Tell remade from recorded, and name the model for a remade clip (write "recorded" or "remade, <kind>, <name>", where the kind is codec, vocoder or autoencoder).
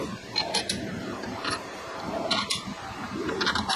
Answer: remade, vocoder, BigVGAN v2